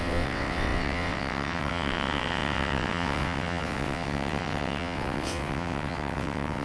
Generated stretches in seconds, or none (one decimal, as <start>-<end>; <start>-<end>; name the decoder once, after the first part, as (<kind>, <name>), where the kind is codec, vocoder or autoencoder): 0.0-6.6 (vocoder, WaveNeXt)